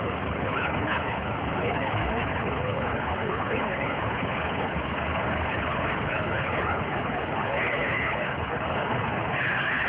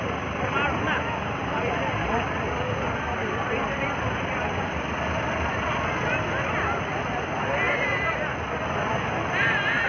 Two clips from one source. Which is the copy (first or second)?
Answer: first